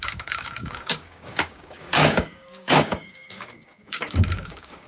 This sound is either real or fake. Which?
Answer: fake